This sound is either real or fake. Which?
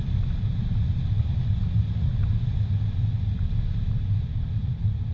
real